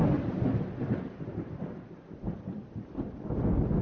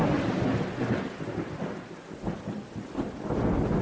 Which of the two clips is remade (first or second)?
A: first